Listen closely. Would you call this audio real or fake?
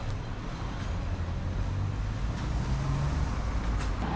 real